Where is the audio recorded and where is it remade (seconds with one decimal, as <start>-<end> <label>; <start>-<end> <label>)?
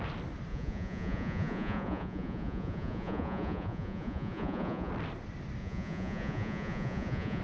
0.0-0.5 recorded; 0.5-4.9 remade; 4.9-5.6 recorded; 5.6-7.4 remade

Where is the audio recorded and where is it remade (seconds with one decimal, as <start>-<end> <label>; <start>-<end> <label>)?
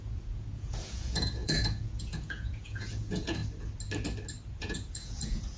0.0-3.4 remade; 3.4-4.6 recorded; 4.6-5.6 remade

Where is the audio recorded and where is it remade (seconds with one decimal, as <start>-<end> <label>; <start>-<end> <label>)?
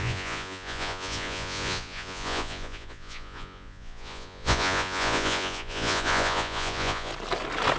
0.0-7.1 remade; 7.1-7.8 recorded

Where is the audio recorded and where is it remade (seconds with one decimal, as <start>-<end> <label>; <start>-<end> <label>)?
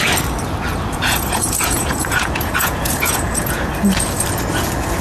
0.0-0.7 recorded; 0.7-3.7 remade; 3.7-5.0 recorded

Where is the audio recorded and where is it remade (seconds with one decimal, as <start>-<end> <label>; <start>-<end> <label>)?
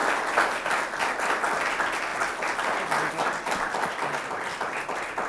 0.0-5.3 recorded